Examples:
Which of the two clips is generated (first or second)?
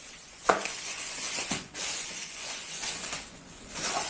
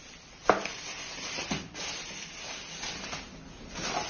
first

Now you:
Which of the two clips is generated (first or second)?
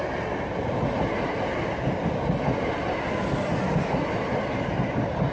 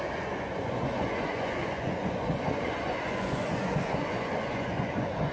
second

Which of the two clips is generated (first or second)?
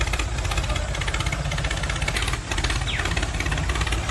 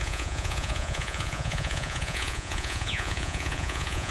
second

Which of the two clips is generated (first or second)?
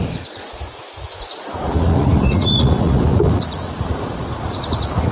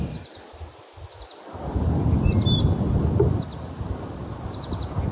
first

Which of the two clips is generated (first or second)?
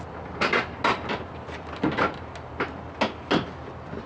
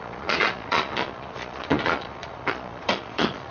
second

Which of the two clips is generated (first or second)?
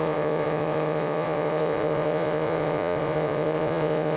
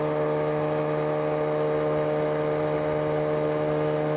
first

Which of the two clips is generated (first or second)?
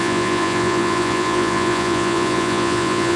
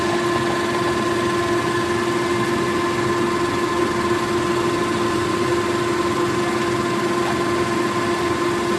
first